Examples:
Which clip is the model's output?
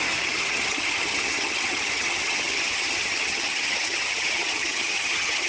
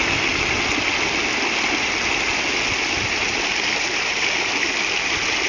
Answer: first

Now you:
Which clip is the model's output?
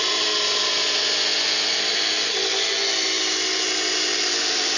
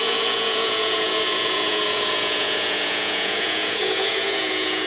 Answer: second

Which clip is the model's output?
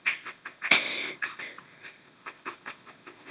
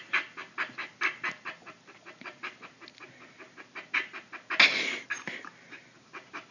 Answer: first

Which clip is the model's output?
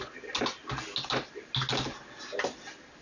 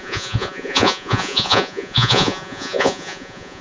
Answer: second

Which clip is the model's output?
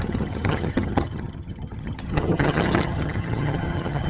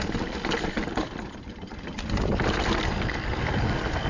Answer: first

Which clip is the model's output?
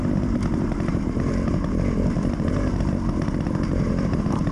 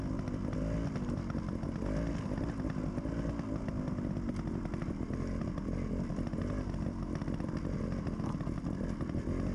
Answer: first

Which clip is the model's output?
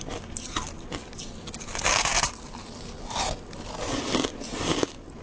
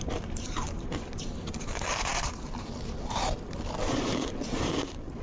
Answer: second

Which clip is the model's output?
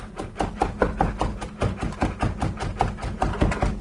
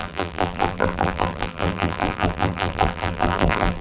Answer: second